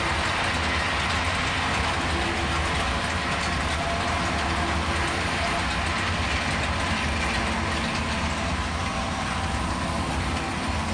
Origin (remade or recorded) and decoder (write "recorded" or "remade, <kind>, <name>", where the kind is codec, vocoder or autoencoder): recorded